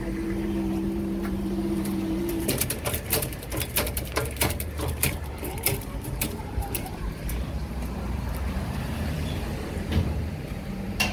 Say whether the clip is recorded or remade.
remade